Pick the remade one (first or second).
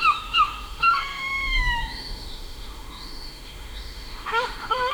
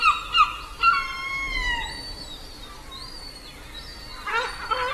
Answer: first